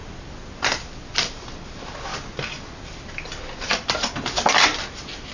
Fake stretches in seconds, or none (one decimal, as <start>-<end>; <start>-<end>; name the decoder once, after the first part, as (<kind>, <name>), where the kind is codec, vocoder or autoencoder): none